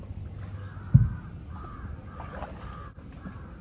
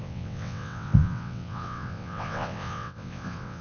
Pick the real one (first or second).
first